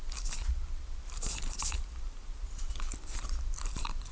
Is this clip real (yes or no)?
yes